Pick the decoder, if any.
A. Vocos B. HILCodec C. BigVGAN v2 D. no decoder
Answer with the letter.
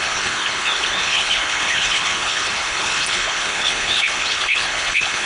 B